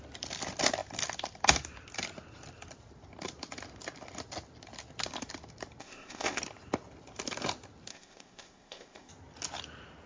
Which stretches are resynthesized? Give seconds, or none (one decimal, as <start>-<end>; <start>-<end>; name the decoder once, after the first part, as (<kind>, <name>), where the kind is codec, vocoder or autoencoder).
5.8-6.4 (codec, ZipCodec); 7.9-9.1